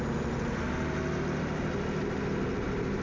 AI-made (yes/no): no